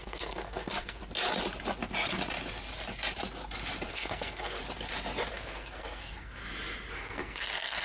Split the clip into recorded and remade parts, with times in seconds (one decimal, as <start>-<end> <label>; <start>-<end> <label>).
0.0-1.0 remade; 1.0-3.9 recorded; 3.9-4.6 remade; 4.6-5.3 recorded; 5.3-6.4 remade; 6.4-6.9 recorded; 6.9-7.8 remade